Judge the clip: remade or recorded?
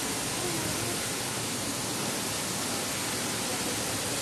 recorded